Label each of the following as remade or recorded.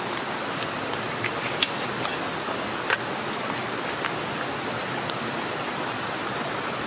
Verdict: recorded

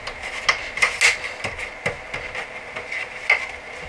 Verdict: recorded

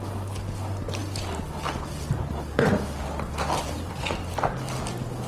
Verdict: recorded